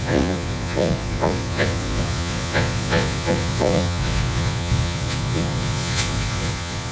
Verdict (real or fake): fake